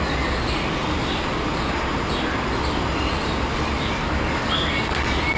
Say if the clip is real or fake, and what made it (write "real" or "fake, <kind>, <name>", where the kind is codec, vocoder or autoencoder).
real